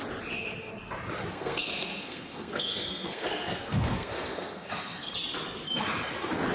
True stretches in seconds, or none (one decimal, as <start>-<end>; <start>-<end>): 0.0-1.3; 5.1-6.5